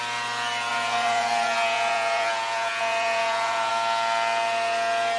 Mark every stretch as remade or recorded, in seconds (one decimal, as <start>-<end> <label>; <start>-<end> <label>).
0.0-0.7 recorded; 0.7-3.7 remade; 3.7-5.2 recorded